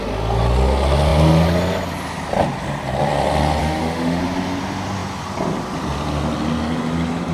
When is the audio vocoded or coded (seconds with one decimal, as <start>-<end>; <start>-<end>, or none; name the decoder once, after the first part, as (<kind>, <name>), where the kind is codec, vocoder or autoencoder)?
3.6-4.2 (autoencoder, DAC-VAE)